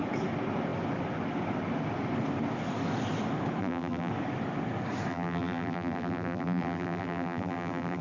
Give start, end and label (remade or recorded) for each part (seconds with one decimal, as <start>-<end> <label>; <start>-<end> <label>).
0.0-3.6 recorded; 3.6-4.1 remade; 4.1-5.1 recorded; 5.1-8.0 remade